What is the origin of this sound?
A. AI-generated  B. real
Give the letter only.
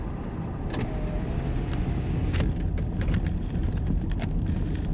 B